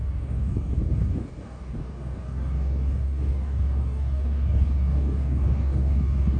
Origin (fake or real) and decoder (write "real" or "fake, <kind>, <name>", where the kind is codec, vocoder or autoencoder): fake, codec, DAC